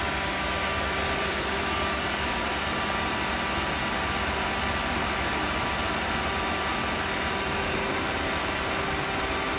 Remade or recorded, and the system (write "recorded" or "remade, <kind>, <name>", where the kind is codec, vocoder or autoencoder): recorded